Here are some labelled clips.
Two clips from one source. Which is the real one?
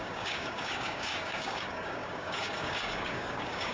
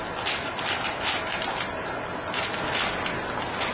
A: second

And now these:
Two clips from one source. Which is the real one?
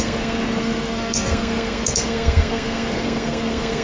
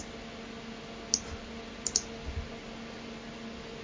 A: second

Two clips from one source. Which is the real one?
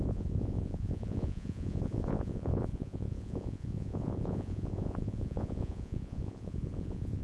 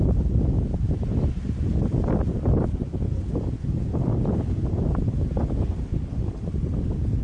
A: second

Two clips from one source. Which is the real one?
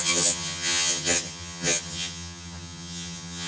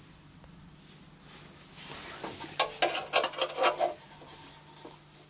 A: second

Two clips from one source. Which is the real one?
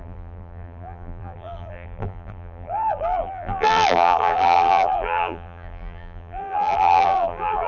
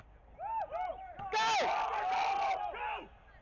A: second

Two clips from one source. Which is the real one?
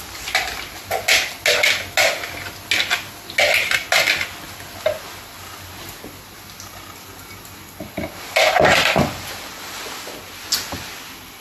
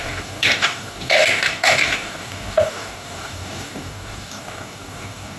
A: first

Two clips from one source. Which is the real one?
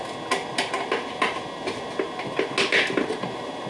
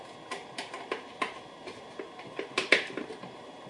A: first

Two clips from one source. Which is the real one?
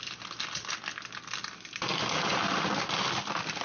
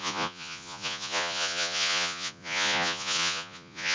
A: first